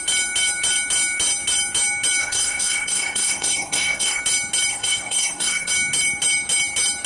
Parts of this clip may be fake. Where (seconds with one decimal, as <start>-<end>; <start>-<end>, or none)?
2.2-4.2; 4.7-5.7